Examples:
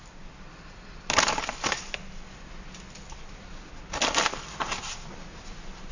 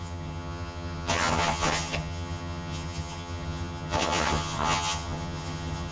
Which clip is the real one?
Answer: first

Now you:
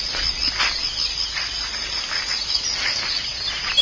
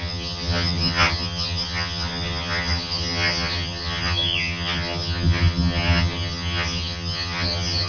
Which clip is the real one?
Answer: first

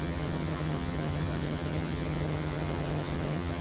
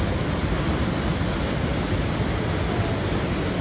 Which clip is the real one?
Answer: second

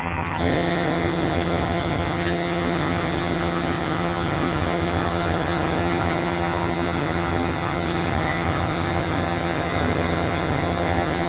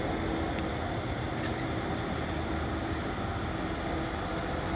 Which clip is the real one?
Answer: second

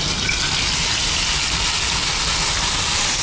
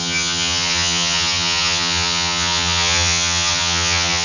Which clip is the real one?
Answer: first